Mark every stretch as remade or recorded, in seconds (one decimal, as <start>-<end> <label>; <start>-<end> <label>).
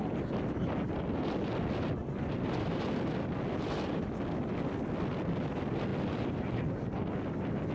0.0-7.7 recorded